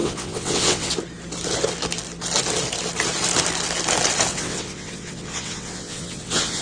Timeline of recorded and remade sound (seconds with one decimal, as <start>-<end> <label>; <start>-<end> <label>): 0.0-0.9 remade; 0.9-4.3 recorded; 4.3-6.6 remade